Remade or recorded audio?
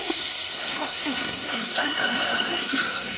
remade